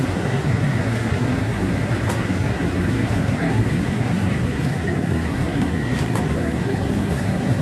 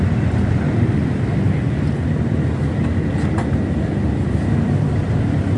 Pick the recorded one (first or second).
second